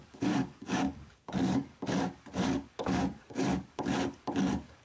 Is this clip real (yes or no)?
no